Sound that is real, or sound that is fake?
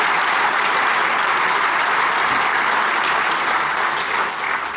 real